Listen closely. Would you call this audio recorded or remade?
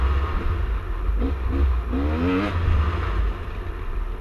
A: recorded